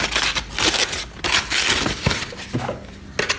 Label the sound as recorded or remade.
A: recorded